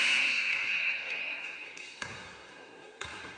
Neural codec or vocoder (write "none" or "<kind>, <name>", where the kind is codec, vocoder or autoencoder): codec, SNAC